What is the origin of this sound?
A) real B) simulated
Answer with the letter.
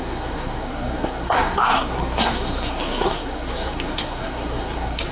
B